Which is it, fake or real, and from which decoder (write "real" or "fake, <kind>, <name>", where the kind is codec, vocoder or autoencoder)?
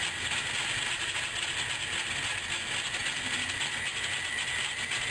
real